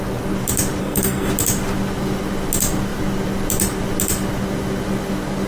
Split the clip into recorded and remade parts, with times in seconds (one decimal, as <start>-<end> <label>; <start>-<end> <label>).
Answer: 0.0-0.8 recorded; 0.8-1.3 remade; 1.3-5.5 recorded